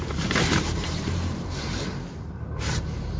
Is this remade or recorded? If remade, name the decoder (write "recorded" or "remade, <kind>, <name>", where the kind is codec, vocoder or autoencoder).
remade, vocoder, BigVGAN v2